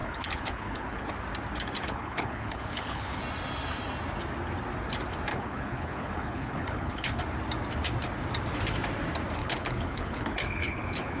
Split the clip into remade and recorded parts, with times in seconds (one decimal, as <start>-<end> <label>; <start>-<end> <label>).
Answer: 0.0-1.1 remade; 1.1-1.8 recorded; 1.8-3.2 remade; 3.2-5.3 recorded; 5.3-7.2 remade; 7.2-9.4 recorded; 9.4-11.2 remade